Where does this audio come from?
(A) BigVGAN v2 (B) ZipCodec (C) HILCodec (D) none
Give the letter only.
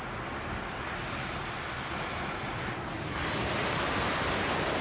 D